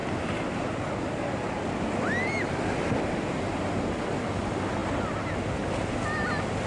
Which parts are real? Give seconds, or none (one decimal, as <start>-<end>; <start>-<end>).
0.0-6.7